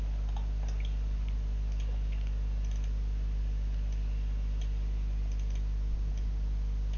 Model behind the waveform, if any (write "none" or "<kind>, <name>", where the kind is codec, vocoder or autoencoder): none